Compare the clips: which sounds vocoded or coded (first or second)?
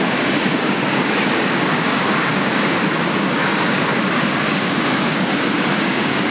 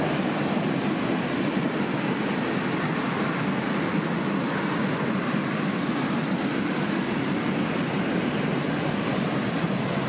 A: first